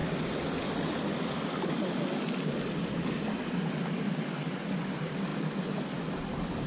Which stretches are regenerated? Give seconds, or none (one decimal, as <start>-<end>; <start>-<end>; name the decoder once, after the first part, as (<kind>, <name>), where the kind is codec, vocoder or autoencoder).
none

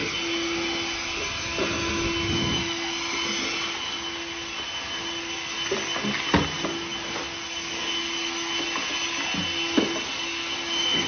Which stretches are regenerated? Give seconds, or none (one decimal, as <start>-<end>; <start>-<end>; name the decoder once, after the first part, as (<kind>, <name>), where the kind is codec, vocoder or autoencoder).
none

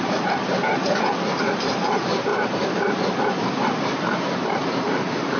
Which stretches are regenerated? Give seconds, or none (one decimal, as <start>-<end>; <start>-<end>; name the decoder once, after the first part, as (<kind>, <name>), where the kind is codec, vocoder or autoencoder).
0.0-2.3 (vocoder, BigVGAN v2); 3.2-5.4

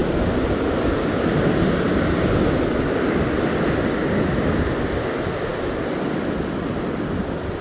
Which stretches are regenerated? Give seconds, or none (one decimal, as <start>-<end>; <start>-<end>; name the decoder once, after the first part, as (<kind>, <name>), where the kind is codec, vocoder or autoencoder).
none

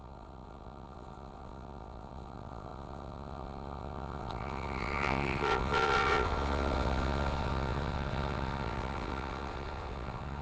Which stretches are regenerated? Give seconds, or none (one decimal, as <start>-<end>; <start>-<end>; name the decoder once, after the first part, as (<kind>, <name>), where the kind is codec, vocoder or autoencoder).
0.0-10.4 (vocoder, WaveNeXt)

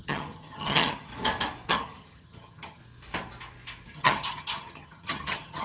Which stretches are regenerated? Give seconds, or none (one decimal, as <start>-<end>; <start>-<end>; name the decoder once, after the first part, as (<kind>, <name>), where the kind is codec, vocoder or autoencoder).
0.0-1.1 (vocoder, HiFi-GAN); 1.7-2.8; 3.9-5.6

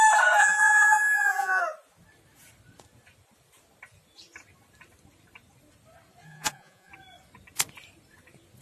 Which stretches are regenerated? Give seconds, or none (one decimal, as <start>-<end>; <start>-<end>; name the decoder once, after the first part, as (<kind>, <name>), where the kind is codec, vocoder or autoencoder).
0.4-1.6 (vocoder, Vocos); 6.3-6.9